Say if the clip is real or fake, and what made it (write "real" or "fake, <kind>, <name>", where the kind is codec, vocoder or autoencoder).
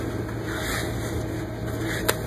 real